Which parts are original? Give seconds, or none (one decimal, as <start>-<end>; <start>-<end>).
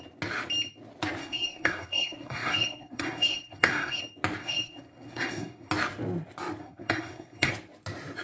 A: 0.0-1.2; 4.0-4.4; 5.7-6.6; 7.5-8.2